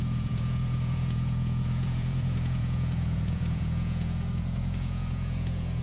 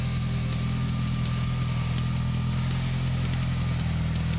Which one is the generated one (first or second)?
first